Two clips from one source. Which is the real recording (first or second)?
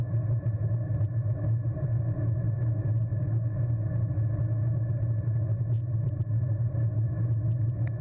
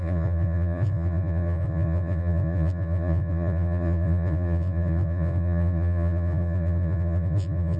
first